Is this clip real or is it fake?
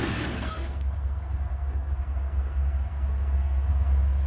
fake